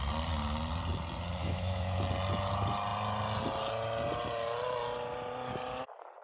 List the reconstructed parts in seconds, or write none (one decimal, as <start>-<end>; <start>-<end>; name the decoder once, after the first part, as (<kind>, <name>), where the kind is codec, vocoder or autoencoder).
1.4-2.0 (autoencoder, DAC-VAE)